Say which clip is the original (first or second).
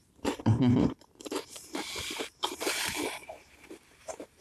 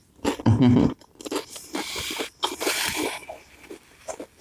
second